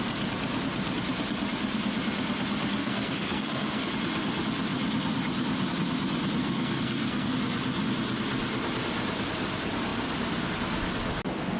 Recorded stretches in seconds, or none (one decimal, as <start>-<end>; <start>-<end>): 0.0-2.8; 3.9-6.4; 7.3-11.6